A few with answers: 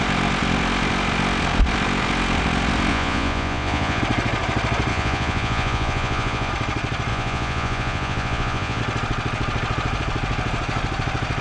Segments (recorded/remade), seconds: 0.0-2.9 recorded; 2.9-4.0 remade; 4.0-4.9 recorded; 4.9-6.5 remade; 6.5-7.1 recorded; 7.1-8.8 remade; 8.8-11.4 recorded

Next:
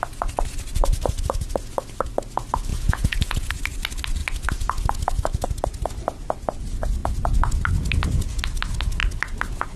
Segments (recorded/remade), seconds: 0.0-2.7 recorded; 2.7-3.5 remade; 3.5-9.8 recorded

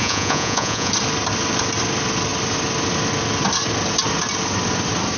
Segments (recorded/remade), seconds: 0.0-0.9 remade; 0.9-5.2 recorded